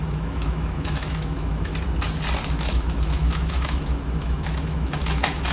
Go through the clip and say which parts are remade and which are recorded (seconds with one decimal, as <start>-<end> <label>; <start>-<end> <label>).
0.0-1.7 remade; 1.7-2.5 recorded; 2.5-5.5 remade